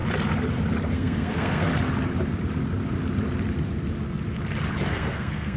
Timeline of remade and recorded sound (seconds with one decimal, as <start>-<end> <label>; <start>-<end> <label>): 0.0-0.9 recorded; 0.9-1.7 remade; 1.7-4.9 recorded; 4.9-5.6 remade